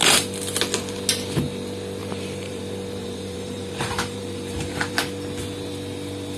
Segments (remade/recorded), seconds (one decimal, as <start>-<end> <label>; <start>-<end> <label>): 0.0-2.0 recorded; 2.0-2.6 remade; 2.6-3.0 recorded; 3.0-4.9 remade; 4.9-6.4 recorded